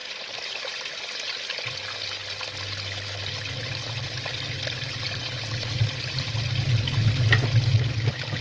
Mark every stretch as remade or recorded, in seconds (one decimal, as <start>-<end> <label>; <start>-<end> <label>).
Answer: 0.0-0.6 remade; 0.6-8.4 recorded